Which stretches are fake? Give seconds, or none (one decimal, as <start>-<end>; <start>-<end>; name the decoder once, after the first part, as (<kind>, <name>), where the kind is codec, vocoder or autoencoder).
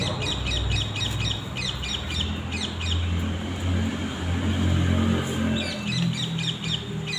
none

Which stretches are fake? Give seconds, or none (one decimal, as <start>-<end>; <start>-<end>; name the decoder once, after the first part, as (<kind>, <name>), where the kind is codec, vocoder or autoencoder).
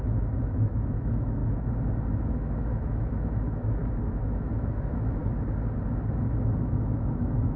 0.0-1.4 (autoencoder, DAC-VAE); 2.1-5.2; 6.6-7.6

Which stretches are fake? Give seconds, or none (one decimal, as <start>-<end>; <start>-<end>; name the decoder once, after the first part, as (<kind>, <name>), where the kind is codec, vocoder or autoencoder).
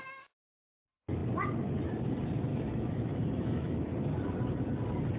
2.5-3.9 (autoencoder, DAC-VAE)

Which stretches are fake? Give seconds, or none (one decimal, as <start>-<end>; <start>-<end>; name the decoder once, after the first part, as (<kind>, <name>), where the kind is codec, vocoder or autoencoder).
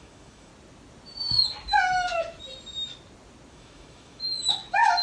0.0-0.5 (autoencoder, DAC-VAE); 3.5-5.0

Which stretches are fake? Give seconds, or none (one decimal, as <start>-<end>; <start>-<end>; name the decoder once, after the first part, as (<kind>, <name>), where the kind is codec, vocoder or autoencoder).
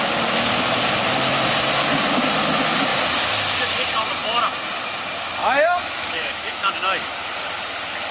5.4-6.7 (autoencoder, DAC-VAE)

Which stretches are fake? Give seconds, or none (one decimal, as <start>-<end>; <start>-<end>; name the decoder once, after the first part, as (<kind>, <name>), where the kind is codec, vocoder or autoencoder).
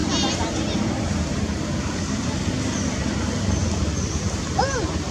none